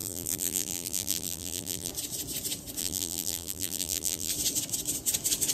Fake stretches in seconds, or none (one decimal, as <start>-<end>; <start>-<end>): 0.0-1.9; 2.8-4.3

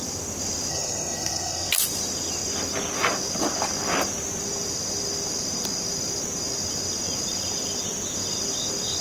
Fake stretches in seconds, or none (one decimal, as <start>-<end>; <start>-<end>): 0.7-1.7

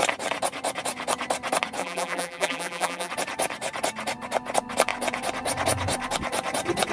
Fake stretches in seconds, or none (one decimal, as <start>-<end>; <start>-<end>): 1.8-3.1